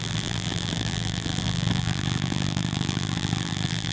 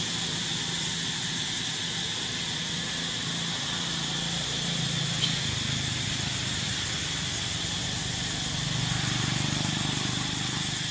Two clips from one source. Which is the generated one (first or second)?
first